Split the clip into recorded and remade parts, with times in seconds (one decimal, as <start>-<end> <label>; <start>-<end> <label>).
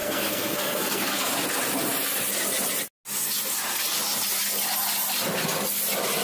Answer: 0.0-1.3 remade; 1.3-6.2 recorded